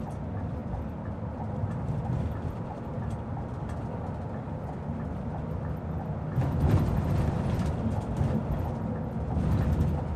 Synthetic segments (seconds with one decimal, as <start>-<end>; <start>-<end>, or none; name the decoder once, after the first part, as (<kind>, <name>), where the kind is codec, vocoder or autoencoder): none